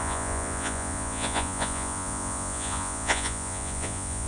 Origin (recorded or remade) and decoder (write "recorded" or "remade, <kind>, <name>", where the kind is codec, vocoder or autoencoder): remade, vocoder, Vocos